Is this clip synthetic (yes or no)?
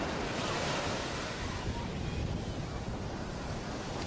no